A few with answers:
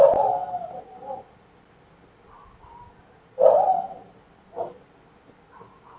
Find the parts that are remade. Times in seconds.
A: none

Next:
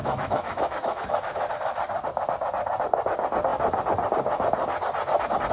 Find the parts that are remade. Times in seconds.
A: 0.0-1.5 (autoencoder, DAC-VAE)

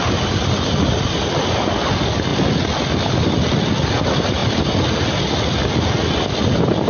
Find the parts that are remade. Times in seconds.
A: none

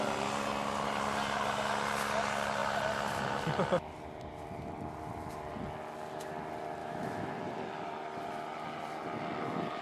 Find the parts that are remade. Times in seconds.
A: 6.8-7.4 (autoencoder, DAC-VAE)

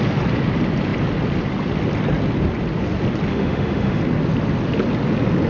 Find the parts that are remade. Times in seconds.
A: 3.3-4.0 (autoencoder, DAC-VAE)

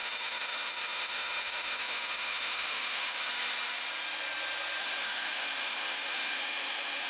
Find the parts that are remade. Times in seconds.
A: 0.0-3.3 (autoencoder, DAC-VAE); 4.8-7.1

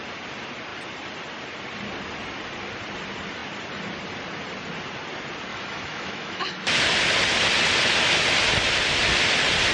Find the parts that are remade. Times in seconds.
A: 5.5-6.8 (autoencoder, DAC-VAE)

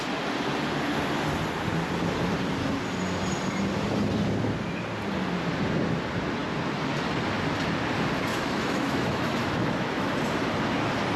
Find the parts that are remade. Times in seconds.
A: 8.3-10.1 (autoencoder, DAC-VAE)